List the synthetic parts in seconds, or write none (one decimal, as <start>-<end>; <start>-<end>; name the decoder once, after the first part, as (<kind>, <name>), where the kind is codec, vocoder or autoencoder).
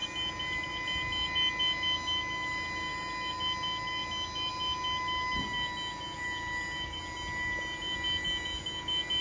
none